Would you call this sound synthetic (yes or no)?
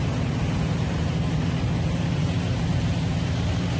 yes